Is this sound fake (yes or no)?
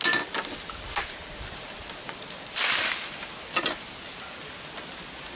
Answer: no